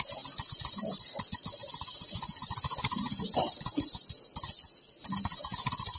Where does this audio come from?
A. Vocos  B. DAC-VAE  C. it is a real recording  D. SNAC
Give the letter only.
C